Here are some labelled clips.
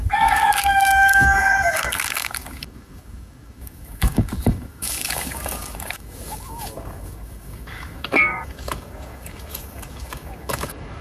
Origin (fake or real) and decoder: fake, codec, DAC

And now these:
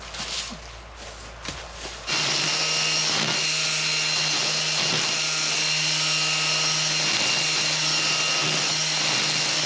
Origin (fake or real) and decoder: real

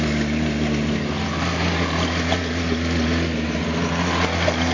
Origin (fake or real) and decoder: real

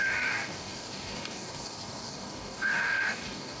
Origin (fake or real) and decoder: fake, codec, DAC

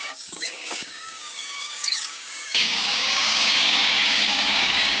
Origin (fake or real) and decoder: fake, codec, DAC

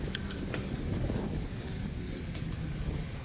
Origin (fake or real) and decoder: fake, codec, DAC